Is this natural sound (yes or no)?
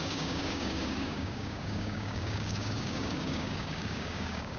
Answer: no